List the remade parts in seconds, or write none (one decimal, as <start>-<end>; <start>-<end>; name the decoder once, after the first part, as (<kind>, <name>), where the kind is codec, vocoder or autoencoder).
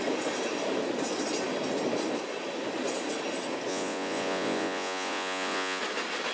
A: 3.7-5.8 (vocoder, Vocos)